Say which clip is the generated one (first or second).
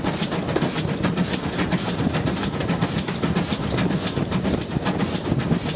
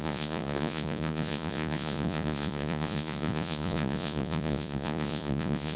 second